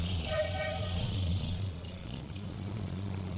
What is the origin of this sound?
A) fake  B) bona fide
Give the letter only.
A